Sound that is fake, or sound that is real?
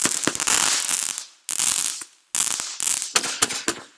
real